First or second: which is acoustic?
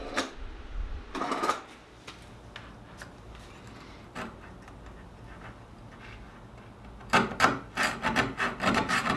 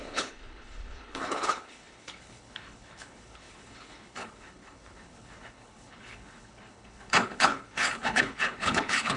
first